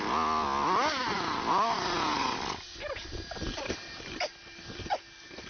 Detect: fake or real real